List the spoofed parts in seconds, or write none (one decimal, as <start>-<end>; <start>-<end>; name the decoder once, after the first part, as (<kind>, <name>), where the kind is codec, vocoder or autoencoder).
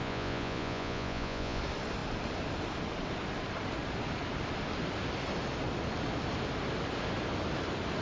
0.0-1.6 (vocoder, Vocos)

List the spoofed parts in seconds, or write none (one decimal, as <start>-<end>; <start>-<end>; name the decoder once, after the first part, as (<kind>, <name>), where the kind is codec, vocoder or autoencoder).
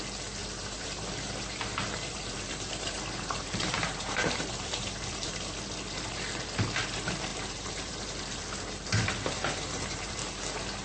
0.4-5.4 (vocoder, BigVGAN v2); 7.3-10.4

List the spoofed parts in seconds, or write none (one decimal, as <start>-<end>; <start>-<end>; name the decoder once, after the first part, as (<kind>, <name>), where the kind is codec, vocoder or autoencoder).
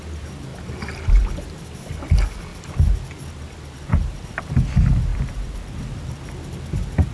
5.1-5.8 (vocoder, BigVGAN v2)